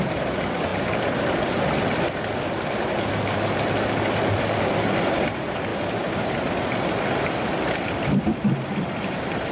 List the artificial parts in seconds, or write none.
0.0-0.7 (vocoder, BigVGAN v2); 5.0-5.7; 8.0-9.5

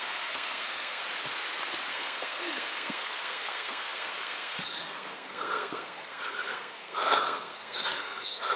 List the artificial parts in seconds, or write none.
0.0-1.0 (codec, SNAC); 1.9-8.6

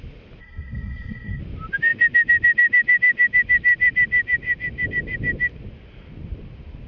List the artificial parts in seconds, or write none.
0.4-1.4 (codec, SNAC)